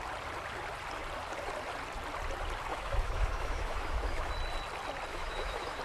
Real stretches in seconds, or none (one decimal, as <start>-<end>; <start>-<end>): 0.0-2.7; 4.3-5.1

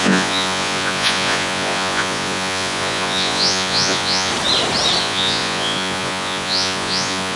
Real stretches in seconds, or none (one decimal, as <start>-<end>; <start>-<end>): 4.3-5.0

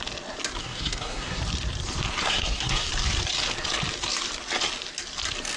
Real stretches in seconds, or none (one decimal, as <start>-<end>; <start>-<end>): 0.0-0.6; 1.4-2.2; 2.9-5.6

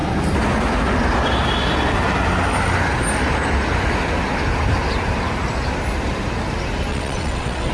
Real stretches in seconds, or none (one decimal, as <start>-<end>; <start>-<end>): 0.0-6.9